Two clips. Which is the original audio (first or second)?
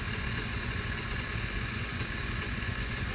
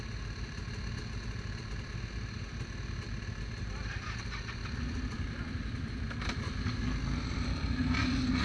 second